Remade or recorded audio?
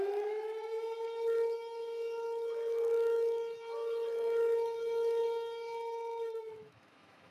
remade